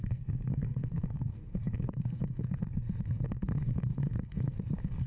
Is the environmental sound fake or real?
fake